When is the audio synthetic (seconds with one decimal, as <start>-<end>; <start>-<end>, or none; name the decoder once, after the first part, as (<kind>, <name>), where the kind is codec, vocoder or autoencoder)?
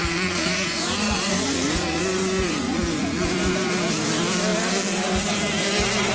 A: 0.0-3.7 (vocoder, Vocos)